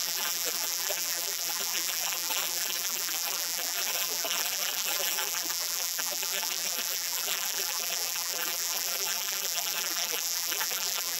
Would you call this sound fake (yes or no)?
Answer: yes